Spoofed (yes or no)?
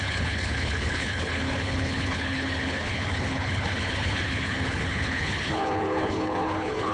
yes